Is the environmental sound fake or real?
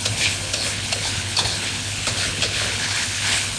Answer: fake